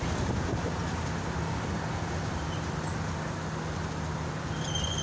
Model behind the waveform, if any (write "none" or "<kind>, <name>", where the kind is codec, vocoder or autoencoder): none